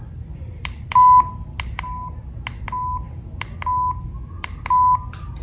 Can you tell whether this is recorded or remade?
recorded